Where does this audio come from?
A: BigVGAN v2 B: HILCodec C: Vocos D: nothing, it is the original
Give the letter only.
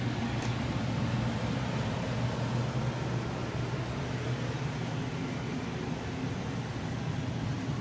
D